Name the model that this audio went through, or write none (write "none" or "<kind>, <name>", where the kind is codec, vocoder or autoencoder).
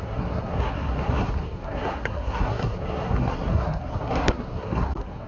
codec, SNAC